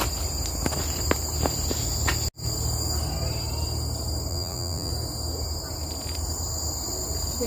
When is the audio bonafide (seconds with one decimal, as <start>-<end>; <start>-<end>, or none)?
0.0-4.3; 4.9-7.5